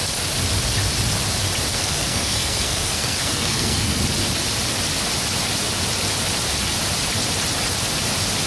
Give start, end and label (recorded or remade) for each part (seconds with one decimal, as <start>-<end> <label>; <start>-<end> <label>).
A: 0.0-1.7 recorded; 1.7-4.0 remade; 4.0-8.5 recorded